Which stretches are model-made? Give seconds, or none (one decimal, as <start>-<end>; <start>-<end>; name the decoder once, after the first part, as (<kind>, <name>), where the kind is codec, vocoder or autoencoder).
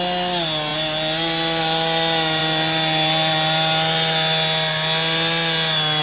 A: none